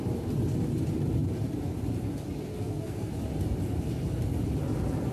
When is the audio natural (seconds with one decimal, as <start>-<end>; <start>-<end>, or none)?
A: 0.0-2.5; 3.1-5.1